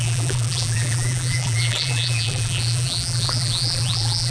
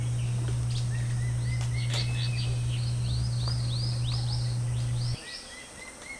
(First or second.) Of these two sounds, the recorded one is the second